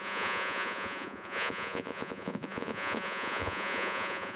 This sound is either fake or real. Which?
fake